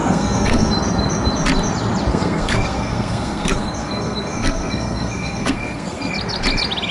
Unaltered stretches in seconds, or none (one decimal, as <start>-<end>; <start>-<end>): 0.7-2.1; 6.1-6.9